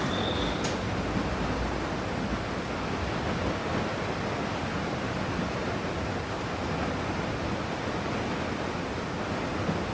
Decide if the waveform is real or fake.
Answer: real